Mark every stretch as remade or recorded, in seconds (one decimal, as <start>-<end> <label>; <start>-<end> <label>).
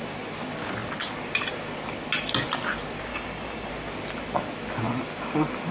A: 0.0-3.1 recorded; 3.1-3.7 remade; 3.7-5.7 recorded